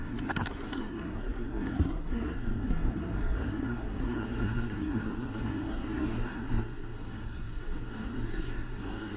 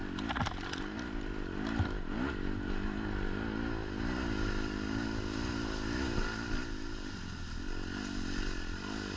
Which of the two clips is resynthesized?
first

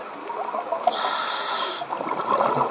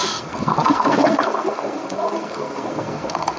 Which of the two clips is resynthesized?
second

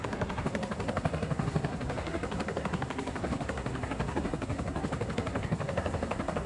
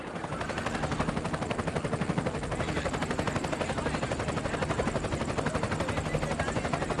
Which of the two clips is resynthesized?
first